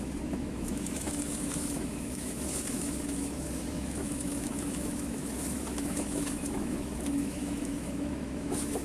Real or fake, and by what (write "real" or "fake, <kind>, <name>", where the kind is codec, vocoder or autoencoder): fake, autoencoder, DAC-VAE